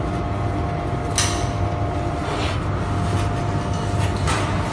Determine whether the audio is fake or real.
real